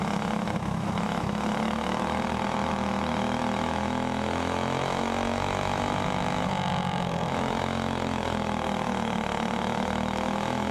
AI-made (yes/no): yes